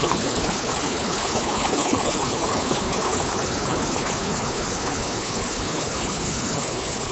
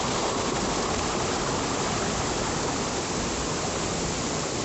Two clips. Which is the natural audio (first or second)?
second